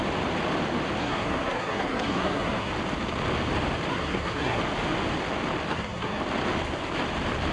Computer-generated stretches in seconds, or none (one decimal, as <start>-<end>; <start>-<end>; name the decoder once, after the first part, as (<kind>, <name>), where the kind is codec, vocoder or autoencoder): 1.0-2.7 (codec, SNAC); 3.9-4.6; 5.7-6.2